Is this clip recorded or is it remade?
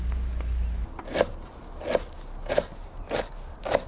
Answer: recorded